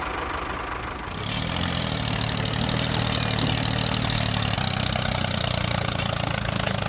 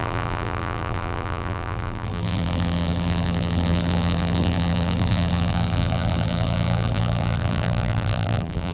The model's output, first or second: second